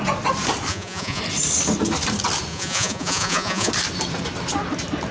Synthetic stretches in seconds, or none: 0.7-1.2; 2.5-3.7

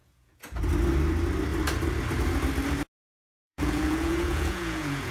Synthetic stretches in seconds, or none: 0.0-0.6; 3.3-5.1